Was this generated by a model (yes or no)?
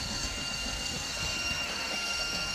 yes